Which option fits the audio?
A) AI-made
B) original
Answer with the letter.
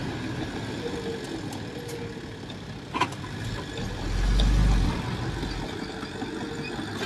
B